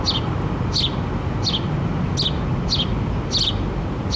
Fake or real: real